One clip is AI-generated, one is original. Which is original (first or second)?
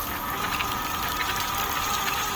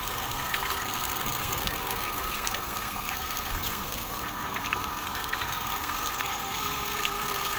first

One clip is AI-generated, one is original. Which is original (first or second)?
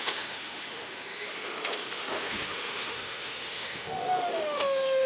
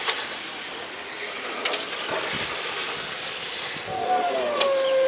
second